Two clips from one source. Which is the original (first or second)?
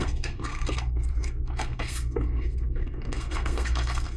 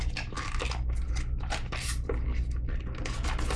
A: second